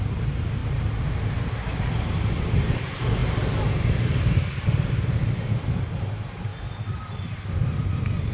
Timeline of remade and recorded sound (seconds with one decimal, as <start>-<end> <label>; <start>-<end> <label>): 0.0-6.5 remade; 6.5-7.2 recorded; 7.2-8.3 remade